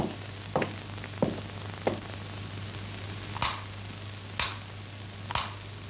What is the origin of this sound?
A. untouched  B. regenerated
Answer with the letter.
A